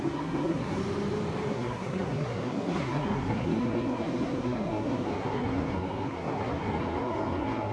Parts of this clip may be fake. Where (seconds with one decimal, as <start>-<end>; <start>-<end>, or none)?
0.0-0.8; 1.5-7.7